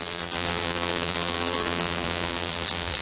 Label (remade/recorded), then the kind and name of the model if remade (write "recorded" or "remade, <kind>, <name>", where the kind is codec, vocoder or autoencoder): remade, vocoder, BigVGAN v2